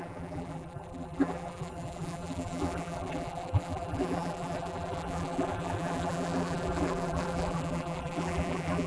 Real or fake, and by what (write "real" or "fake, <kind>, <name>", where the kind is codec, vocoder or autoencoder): fake, vocoder, BigVGAN v2